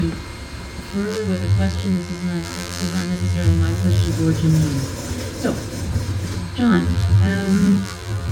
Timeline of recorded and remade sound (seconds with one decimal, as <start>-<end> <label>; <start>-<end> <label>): 0.0-0.9 recorded; 0.9-4.1 remade; 4.1-6.6 recorded; 6.6-8.3 remade